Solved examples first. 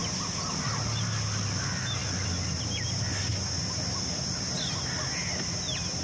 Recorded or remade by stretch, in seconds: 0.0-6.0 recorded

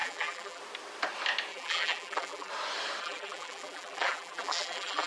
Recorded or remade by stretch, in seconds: 0.0-0.6 remade; 0.6-1.5 recorded; 1.5-2.5 remade; 2.5-3.0 recorded; 3.0-5.1 remade

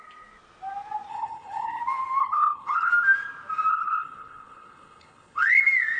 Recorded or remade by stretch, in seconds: 0.0-1.1 recorded; 1.1-1.8 remade; 1.8-2.2 recorded; 2.2-2.9 remade; 2.9-3.7 recorded; 3.7-5.6 remade; 5.6-6.0 recorded

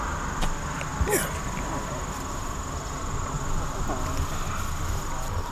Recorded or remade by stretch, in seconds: 0.0-5.5 recorded

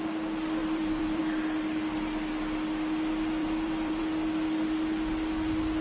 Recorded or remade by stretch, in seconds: 0.0-0.6 recorded; 0.6-1.2 remade; 1.2-3.4 recorded; 3.4-4.0 remade; 4.0-5.8 recorded